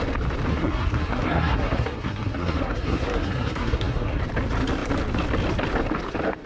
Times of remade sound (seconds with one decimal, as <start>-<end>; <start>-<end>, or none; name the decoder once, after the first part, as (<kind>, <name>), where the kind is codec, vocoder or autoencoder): 0.5-4.2 (codec, SNAC)